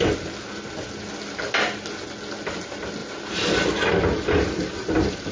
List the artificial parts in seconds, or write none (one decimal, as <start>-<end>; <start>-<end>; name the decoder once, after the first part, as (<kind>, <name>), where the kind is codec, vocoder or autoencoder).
3.0-3.7 (vocoder, BigVGAN v2)